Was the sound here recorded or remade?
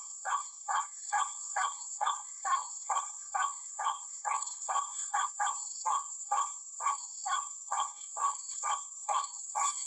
remade